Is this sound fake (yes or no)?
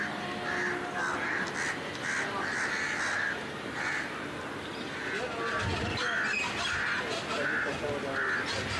no